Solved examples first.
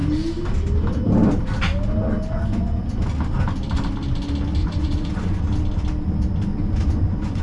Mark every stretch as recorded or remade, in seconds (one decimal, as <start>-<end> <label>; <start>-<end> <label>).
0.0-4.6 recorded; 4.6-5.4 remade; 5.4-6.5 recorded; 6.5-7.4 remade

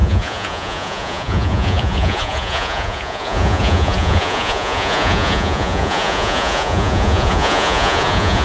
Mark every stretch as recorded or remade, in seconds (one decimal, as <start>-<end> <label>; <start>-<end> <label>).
0.0-8.4 remade

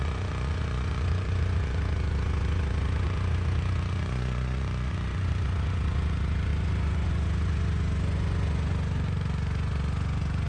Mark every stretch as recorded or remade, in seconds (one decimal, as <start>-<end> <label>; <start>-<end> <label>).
0.0-10.5 remade